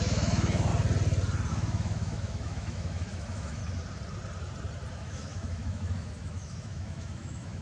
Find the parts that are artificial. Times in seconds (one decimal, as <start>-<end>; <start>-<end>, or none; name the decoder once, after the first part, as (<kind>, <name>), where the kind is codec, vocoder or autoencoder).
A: 0.0-0.7 (autoencoder, DAC-VAE); 1.5-3.6; 4.9-7.6